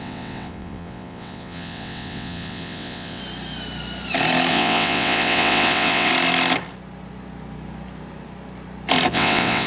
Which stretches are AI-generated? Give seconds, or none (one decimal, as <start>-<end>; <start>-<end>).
0.0-3.2; 4.5-6.1; 9.1-9.7